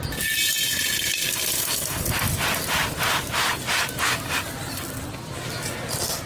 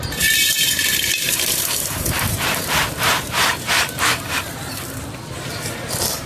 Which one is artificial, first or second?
second